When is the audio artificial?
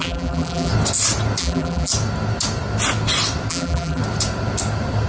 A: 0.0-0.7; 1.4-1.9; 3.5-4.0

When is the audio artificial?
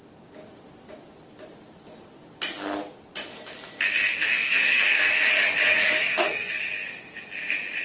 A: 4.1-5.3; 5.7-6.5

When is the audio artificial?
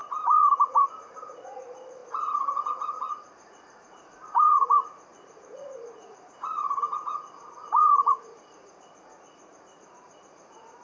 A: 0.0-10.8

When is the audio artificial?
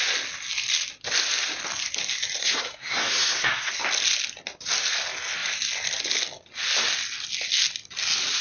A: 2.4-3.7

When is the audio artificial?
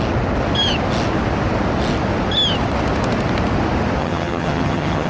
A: 4.0-5.1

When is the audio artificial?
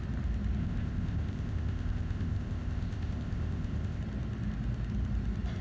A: 0.6-4.0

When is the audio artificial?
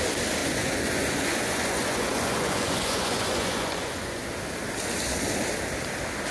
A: 0.4-4.2